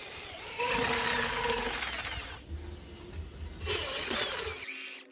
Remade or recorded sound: recorded